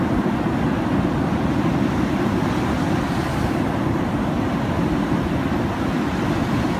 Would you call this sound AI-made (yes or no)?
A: no